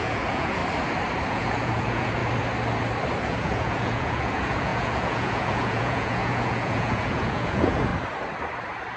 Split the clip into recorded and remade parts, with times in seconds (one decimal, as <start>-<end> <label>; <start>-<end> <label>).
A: 0.0-0.6 remade; 0.6-1.3 recorded; 1.3-2.2 remade; 2.2-3.2 recorded; 3.2-7.9 remade; 7.9-9.0 recorded

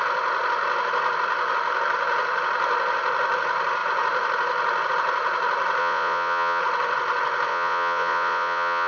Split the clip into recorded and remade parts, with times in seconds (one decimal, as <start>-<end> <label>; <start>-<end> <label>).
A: 0.0-5.8 recorded; 5.8-6.6 remade; 6.6-7.5 recorded; 7.5-8.9 remade

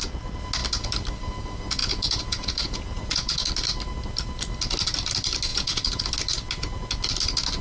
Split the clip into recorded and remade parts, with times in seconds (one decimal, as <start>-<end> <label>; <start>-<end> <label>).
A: 0.0-1.8 recorded; 1.8-3.5 remade; 3.5-5.5 recorded; 5.5-6.0 remade; 6.0-7.6 recorded